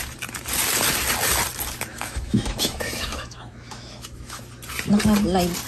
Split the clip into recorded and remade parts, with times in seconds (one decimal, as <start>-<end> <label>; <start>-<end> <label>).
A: 0.0-1.9 recorded; 1.9-4.4 remade; 4.4-5.7 recorded